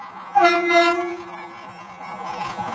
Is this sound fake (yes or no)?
yes